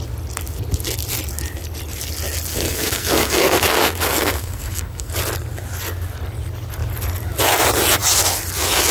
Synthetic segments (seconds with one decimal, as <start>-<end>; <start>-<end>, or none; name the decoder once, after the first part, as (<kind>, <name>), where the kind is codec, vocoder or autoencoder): 2.5-5.1 (codec, SNAC)